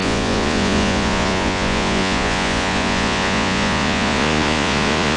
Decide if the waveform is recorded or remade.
remade